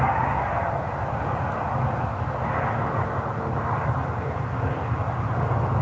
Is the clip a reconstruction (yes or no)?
no